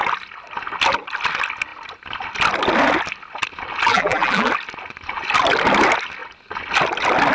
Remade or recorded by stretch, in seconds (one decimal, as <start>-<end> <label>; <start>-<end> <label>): 0.0-3.9 recorded; 3.9-4.5 remade; 4.5-7.3 recorded